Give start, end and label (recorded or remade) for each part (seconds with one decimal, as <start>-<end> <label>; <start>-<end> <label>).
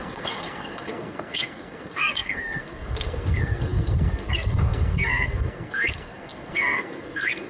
0.0-7.5 remade